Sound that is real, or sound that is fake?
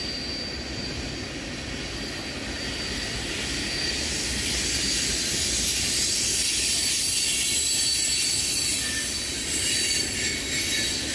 real